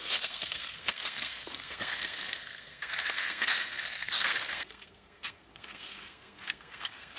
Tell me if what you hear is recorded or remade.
remade